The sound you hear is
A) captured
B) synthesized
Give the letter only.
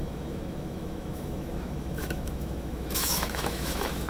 B